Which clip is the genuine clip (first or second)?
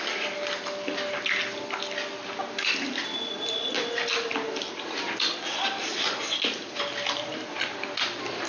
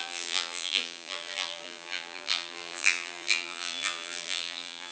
first